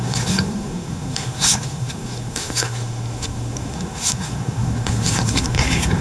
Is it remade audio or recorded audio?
remade